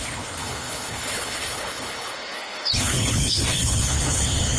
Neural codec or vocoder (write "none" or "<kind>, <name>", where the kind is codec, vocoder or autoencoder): codec, HILCodec